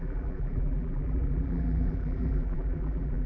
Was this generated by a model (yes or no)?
yes